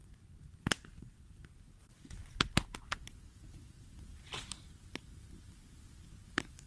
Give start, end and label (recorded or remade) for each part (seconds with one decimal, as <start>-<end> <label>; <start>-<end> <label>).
0.0-6.7 recorded